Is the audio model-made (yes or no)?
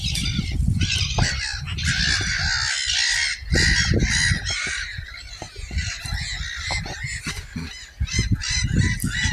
no